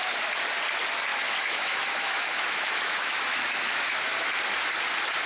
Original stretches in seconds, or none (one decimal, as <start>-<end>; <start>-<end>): 0.0-1.1; 4.3-5.3